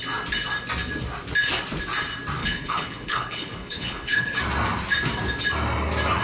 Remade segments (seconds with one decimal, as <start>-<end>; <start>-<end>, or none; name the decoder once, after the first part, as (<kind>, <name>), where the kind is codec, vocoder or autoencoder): 2.4-4.4 (codec, HILCodec)